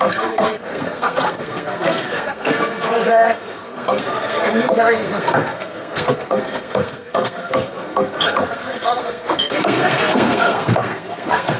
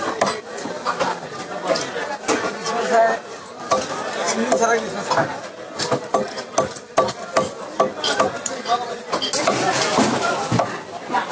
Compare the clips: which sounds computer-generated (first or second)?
first